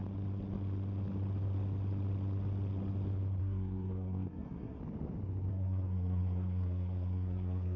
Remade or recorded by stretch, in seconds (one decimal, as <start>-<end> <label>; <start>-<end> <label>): 0.0-3.4 recorded; 3.4-4.8 remade; 4.8-5.5 recorded; 5.5-7.8 remade